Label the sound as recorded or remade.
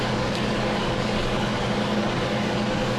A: remade